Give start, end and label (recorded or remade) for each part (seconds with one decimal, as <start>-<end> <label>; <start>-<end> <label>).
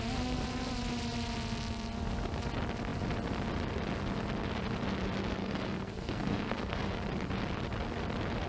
0.0-5.4 recorded; 5.4-6.9 remade; 6.9-8.5 recorded